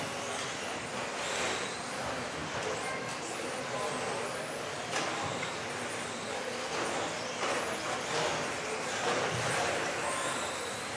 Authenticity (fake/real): real